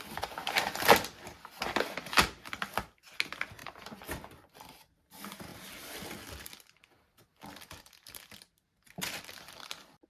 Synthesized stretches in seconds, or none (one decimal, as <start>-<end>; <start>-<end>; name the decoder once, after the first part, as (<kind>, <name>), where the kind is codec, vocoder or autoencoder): 3.6-5.0 (vocoder, BigVGAN v2); 5.5-6.2; 7.3-8.2